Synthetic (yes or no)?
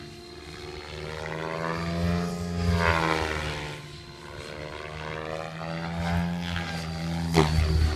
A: no